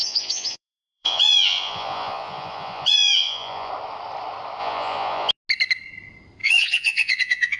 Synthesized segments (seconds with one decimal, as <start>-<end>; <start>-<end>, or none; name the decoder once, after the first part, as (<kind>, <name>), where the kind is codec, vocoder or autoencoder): 0.0-3.7 (vocoder, Vocos); 4.6-5.3; 6.4-7.6